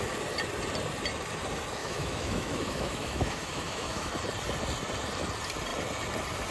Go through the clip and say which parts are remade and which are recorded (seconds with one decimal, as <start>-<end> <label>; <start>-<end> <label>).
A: 0.0-1.8 recorded; 1.8-4.1 remade; 4.1-6.5 recorded